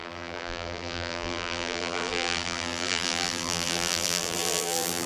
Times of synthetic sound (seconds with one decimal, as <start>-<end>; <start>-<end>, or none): 0.0-5.1